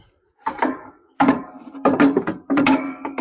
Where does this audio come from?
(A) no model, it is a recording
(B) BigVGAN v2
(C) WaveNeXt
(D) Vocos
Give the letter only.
B